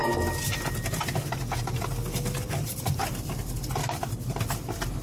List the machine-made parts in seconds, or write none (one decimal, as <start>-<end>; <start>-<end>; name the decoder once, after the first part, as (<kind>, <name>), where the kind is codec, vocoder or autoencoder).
none